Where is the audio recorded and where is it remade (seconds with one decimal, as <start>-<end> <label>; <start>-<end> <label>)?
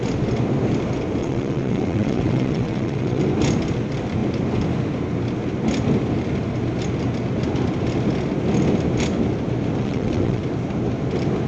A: 0.0-1.2 recorded; 1.2-3.2 remade; 3.2-9.8 recorded; 9.8-10.4 remade; 10.4-11.5 recorded